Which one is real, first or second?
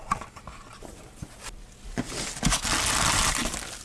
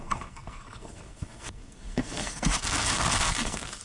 first